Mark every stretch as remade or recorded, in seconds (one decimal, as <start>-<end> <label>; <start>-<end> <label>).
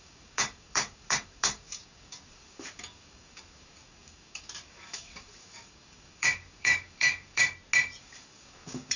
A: 0.0-7.4 remade; 7.4-8.0 recorded; 8.0-9.0 remade